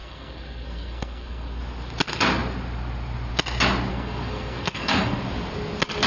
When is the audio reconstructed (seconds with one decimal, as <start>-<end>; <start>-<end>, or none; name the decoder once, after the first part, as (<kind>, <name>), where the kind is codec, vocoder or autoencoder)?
0.0-1.6 (codec, SNAC); 3.9-5.2